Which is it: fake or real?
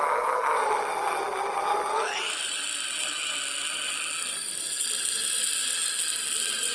real